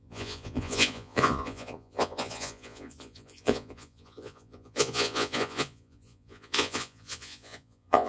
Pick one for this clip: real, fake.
fake